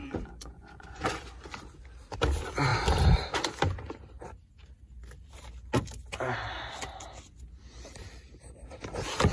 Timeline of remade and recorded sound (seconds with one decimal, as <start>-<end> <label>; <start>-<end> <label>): 0.0-1.2 remade; 1.2-9.3 recorded